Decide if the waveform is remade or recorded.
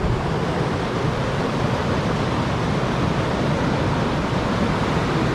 recorded